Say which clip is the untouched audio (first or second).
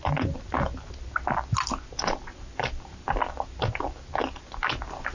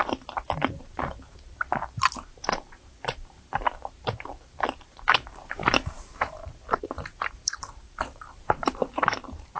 first